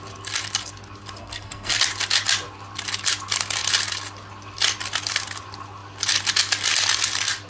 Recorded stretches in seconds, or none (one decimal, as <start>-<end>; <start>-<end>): 0.0-1.2; 1.8-7.5